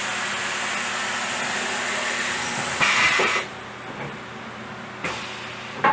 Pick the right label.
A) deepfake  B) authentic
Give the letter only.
B